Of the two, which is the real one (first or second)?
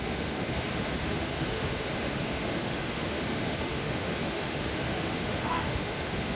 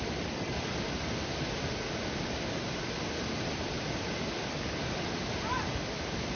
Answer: second